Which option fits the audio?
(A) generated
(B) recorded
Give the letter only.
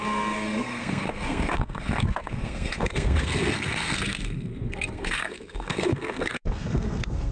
A